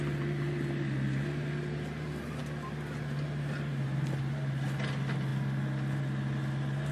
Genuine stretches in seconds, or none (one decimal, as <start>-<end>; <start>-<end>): 0.0-6.9